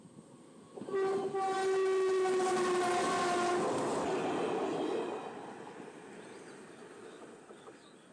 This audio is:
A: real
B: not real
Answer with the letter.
A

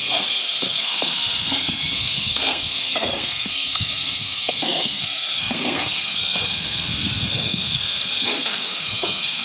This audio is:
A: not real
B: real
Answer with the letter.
A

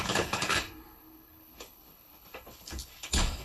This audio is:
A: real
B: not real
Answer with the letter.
B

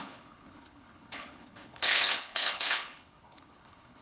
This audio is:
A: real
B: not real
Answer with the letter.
B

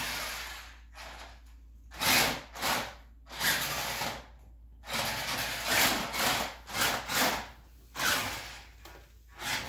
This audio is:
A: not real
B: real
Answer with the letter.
B